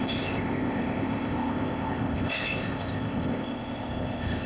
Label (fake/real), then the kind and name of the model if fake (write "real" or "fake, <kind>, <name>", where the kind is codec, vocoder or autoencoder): fake, codec, ZipCodec